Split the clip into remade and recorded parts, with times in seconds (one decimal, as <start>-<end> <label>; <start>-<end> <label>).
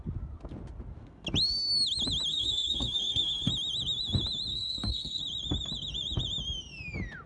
0.0-2.3 recorded; 2.3-3.5 remade; 3.5-4.5 recorded; 4.5-5.2 remade; 5.2-7.3 recorded